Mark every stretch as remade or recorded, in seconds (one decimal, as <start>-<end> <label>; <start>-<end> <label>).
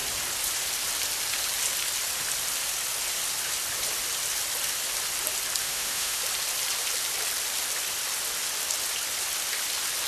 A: 0.0-5.6 recorded; 5.6-6.2 remade; 6.2-10.1 recorded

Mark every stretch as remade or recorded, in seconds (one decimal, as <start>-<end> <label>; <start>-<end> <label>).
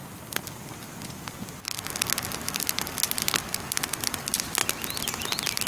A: 0.0-5.7 recorded